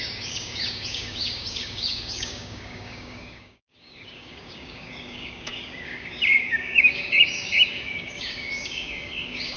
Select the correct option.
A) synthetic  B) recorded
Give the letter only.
A